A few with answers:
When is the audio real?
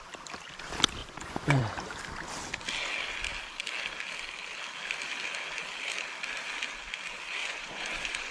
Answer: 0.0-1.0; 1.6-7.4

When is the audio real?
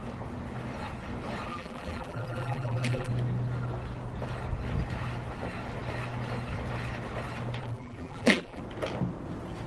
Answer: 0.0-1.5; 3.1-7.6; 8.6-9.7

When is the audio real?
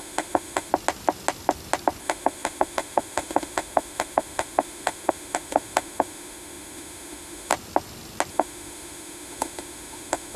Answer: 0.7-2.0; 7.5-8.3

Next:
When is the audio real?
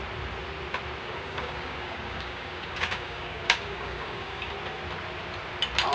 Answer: 0.0-1.0; 4.5-5.9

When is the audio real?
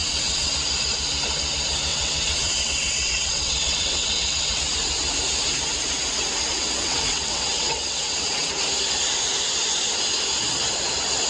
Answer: 0.5-1.9; 4.6-6.5; 8.5-11.3